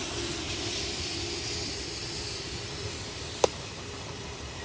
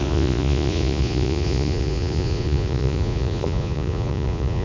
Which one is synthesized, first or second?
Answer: second